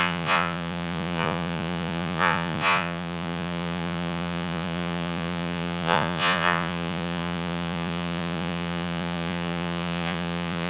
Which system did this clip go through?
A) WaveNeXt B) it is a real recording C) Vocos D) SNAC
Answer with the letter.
C